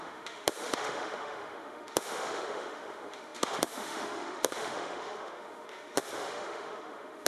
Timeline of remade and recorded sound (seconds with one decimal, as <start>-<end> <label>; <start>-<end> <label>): 0.0-7.3 remade